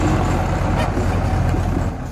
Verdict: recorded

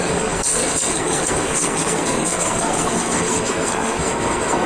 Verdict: remade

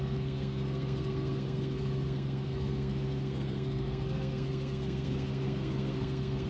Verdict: remade